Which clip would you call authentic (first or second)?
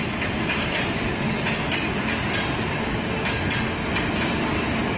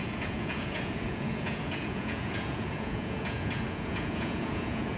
first